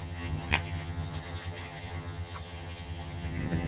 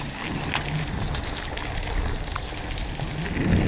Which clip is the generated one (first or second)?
first